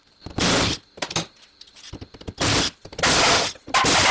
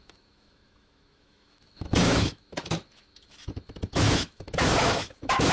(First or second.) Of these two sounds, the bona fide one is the first